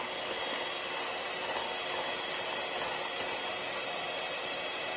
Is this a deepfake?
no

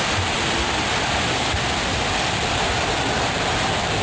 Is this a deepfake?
yes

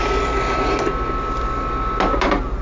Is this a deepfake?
no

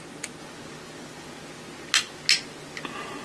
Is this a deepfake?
no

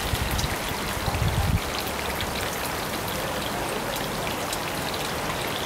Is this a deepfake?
no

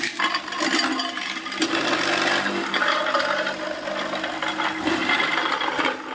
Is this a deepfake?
no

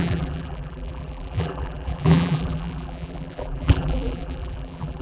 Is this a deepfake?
yes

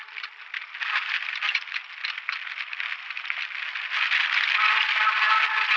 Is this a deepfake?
no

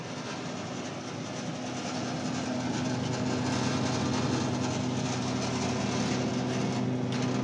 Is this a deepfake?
no